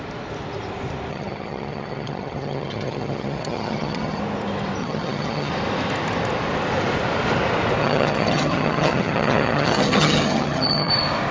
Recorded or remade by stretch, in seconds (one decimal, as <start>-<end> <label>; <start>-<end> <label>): 0.0-1.1 recorded; 1.1-4.2 remade; 4.2-4.8 recorded; 4.8-5.5 remade; 5.5-7.8 recorded; 7.8-10.9 remade; 10.9-11.3 recorded